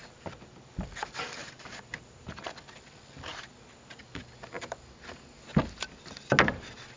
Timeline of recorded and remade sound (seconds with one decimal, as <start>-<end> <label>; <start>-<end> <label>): 0.0-1.4 recorded; 1.4-2.5 remade; 2.5-7.0 recorded